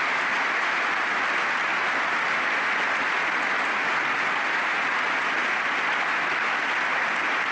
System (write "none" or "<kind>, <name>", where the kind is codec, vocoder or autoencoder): none